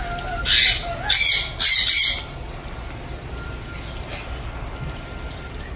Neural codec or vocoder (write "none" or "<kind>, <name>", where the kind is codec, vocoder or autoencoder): none